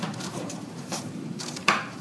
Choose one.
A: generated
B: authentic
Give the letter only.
A